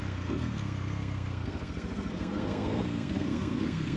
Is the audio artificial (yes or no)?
yes